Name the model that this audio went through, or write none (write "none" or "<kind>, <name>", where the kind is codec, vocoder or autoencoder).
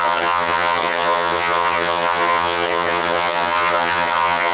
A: vocoder, HiFi-GAN